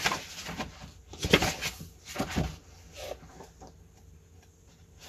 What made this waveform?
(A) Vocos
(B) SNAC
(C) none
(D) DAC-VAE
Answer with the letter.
C